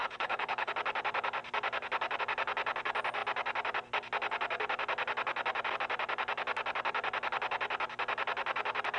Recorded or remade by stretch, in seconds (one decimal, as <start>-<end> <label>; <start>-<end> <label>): 0.0-0.7 remade; 0.7-9.0 recorded